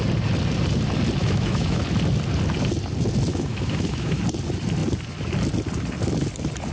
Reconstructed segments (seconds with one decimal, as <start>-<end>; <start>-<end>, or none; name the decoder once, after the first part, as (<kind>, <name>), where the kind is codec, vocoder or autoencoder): 1.2-1.8 (autoencoder, DAC-VAE); 3.3-4.2